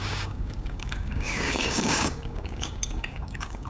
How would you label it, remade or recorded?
remade